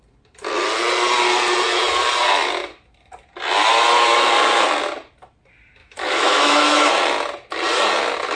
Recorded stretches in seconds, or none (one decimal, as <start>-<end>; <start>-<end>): 0.0-5.8; 6.9-8.3